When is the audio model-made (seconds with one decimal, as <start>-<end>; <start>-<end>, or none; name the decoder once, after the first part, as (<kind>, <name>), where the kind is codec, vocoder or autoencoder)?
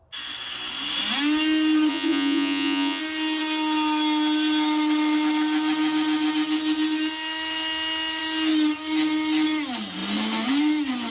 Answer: 1.9-3.0 (vocoder, Vocos)